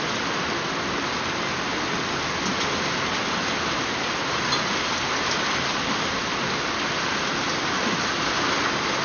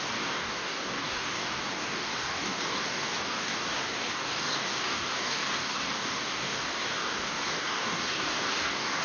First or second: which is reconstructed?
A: second